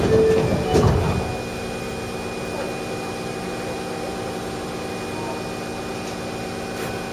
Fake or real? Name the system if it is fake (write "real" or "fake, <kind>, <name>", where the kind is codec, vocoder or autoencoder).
real